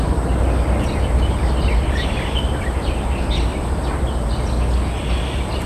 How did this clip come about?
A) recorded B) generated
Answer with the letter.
A